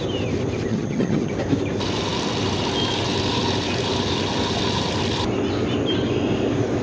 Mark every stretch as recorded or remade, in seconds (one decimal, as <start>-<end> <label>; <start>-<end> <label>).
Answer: 0.0-0.7 recorded; 0.7-1.3 remade; 1.3-6.8 recorded